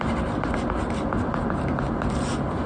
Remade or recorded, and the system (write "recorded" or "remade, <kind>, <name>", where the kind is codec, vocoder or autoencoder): recorded